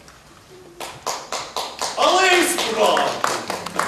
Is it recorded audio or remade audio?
recorded